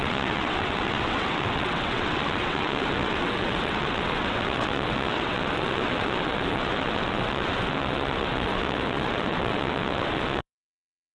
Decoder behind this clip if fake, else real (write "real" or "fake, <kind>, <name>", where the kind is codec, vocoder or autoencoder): fake, vocoder, WaveNeXt